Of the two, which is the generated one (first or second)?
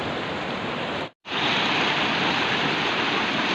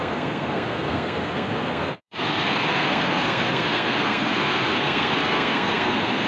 second